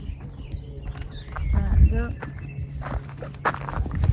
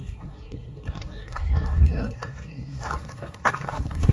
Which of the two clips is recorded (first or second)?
first